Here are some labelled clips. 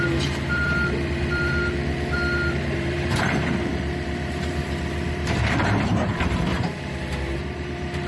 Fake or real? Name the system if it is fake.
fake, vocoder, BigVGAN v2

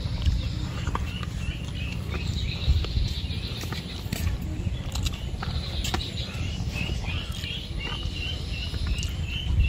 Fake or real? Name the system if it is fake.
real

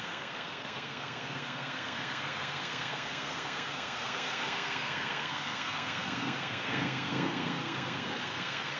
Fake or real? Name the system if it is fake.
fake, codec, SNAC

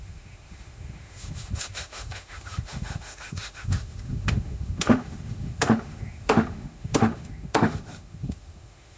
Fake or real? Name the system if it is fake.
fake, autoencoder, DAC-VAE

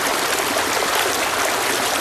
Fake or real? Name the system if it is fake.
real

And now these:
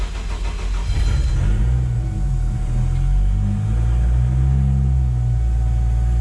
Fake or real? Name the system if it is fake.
real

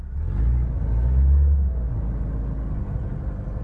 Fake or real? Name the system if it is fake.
real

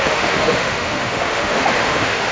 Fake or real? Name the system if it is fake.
fake, autoencoder, DAC-VAE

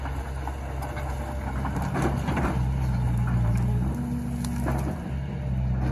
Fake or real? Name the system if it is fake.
real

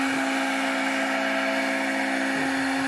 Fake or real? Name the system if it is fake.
real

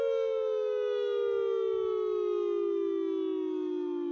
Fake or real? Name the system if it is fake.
real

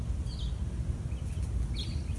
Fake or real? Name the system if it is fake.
real